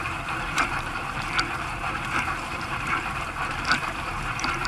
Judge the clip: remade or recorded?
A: remade